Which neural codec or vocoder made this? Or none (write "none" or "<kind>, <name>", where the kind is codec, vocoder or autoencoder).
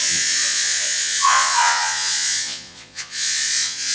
vocoder, Vocos